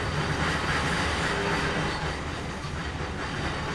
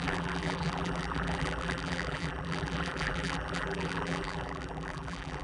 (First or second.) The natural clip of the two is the first